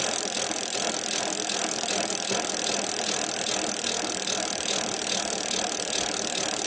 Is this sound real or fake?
real